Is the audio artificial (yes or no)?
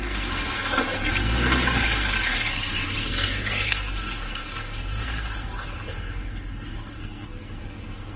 yes